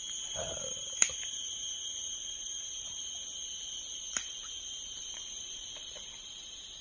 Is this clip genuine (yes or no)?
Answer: no